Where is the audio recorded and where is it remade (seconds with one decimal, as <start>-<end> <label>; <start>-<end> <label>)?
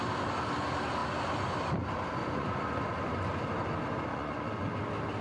0.0-2.2 recorded; 2.2-2.8 remade; 2.8-4.1 recorded; 4.1-4.7 remade; 4.7-5.2 recorded